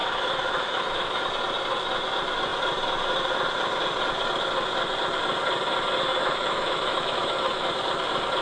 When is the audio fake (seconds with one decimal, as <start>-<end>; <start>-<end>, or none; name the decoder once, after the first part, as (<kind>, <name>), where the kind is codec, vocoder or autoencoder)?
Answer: 0.0-1.3 (autoencoder, DAC-VAE); 6.1-7.7